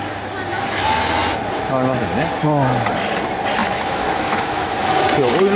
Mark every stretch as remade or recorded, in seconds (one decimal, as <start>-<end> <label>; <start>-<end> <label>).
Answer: 0.0-3.6 recorded; 3.6-5.0 remade; 5.0-5.6 recorded